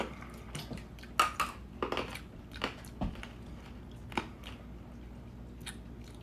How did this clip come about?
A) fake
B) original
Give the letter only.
B